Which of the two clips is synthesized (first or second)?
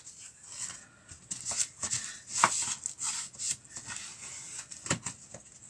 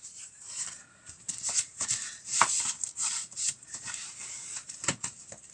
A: second